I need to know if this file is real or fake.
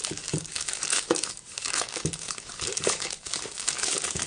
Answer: fake